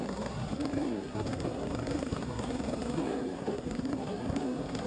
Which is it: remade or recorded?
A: remade